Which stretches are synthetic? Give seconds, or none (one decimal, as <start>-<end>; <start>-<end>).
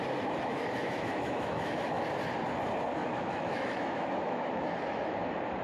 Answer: 0.5-2.0; 3.0-5.0